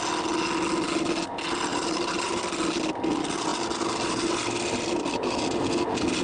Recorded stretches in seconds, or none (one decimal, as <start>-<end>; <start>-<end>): 0.0-1.7; 2.4-6.2